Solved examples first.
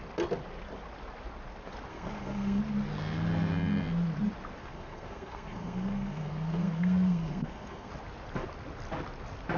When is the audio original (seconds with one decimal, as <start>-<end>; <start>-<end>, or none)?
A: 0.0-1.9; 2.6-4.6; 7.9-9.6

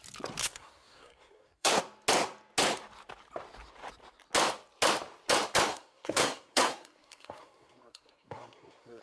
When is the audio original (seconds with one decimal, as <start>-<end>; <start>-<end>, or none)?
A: 0.0-0.4; 1.8-5.7

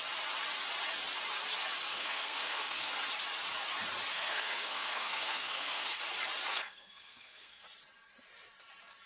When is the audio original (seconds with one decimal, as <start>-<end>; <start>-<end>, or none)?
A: 0.0-1.9; 2.9-4.1; 6.0-6.5; 7.6-9.1

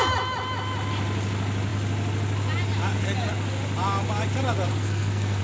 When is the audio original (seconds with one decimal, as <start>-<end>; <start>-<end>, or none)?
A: 0.0-4.7

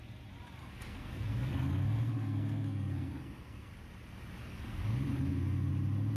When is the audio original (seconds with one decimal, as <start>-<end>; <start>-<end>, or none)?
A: 0.0-0.6; 3.7-4.4; 5.7-6.2

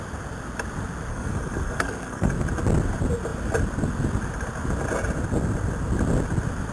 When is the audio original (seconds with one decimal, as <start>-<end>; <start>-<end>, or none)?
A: 0.0-1.1; 2.3-6.7